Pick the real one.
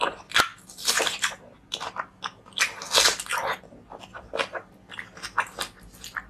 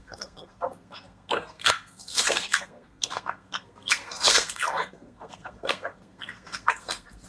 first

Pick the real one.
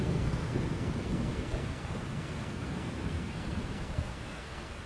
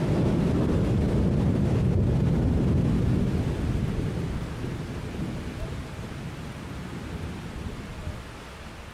second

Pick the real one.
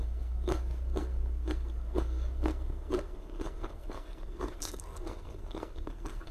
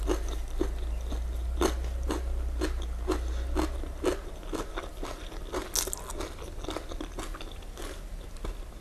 second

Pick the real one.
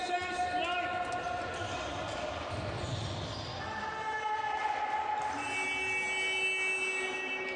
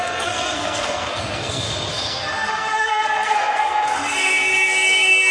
first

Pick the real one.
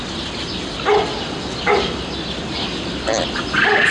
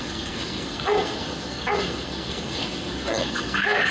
first